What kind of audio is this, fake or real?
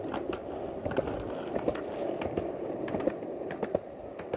real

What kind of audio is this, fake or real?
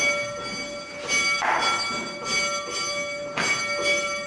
real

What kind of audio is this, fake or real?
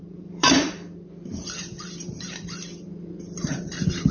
fake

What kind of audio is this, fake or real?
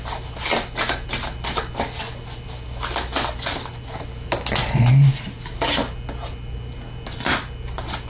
real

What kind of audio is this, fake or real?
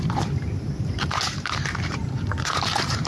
fake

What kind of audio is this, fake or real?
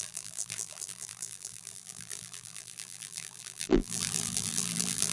fake